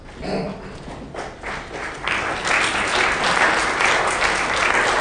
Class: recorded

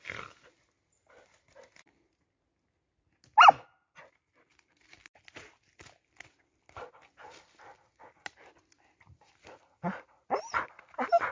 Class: recorded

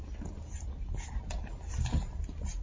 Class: recorded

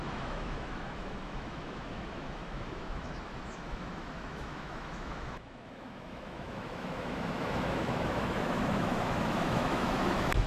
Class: remade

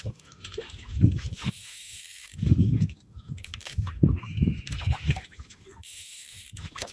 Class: remade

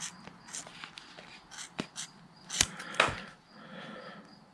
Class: recorded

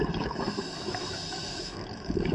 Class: remade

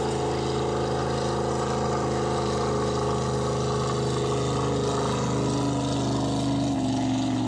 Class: recorded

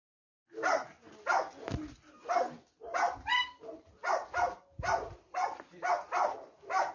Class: recorded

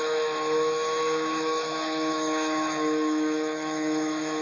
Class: remade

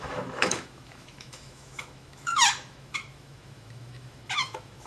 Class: remade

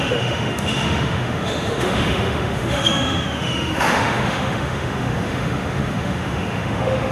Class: remade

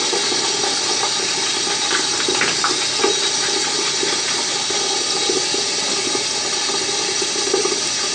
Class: recorded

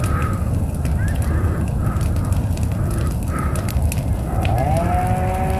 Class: recorded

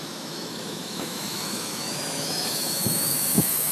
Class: remade